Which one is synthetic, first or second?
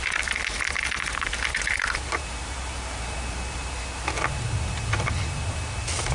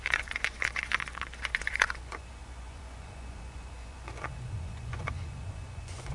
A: second